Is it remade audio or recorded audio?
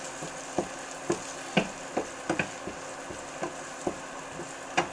recorded